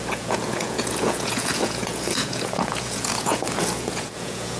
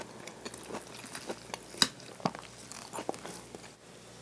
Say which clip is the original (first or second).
second